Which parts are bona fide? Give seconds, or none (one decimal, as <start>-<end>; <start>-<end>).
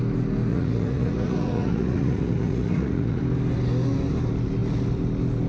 0.0-0.5; 3.2-5.5